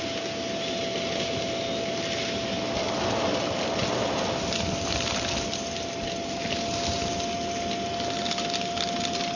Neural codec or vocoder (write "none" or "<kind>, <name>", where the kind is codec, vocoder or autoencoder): none